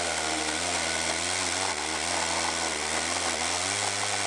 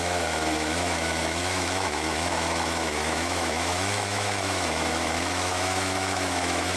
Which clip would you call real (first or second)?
first